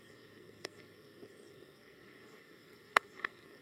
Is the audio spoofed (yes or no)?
yes